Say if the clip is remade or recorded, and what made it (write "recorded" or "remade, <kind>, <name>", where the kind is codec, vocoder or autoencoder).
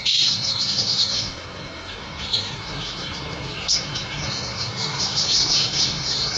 remade, codec, SNAC